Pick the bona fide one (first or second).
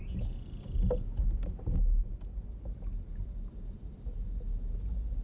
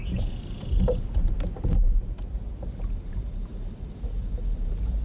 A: first